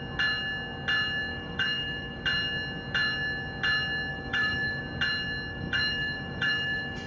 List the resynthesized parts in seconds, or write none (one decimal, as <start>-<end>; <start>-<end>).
1.3-2.2; 4.1-4.8; 5.5-7.1